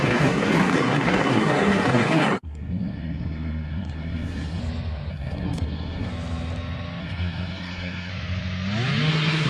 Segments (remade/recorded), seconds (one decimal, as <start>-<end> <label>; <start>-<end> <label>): 0.0-4.6 remade; 4.6-5.1 recorded; 5.1-6.1 remade; 6.1-7.0 recorded; 7.0-8.1 remade; 8.1-9.1 recorded; 9.1-9.5 remade